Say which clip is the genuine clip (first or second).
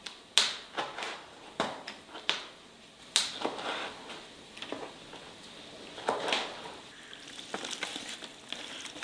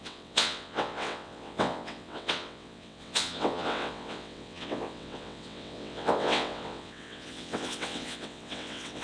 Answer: first